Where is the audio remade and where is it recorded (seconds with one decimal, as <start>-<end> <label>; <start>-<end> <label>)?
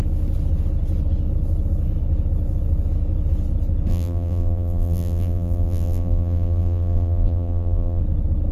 0.0-3.9 recorded; 3.9-8.0 remade; 8.0-8.5 recorded